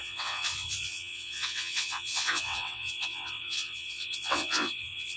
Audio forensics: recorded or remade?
remade